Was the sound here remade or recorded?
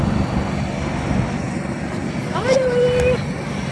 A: remade